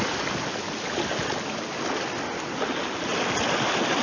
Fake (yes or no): no